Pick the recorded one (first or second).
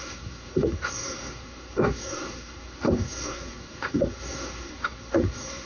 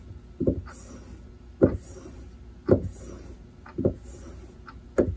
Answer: second